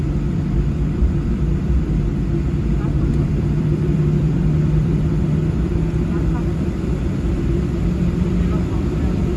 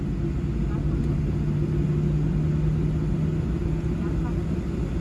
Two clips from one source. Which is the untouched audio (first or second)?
second